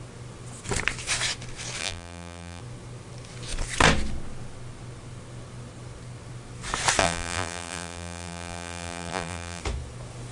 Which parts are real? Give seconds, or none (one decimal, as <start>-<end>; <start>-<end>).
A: 0.0-1.8; 2.6-7.0; 9.6-10.3